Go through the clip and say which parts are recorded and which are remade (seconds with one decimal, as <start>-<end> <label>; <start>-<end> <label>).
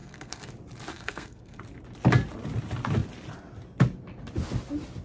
0.0-0.5 remade; 0.5-0.9 recorded; 0.9-1.6 remade; 1.6-5.0 recorded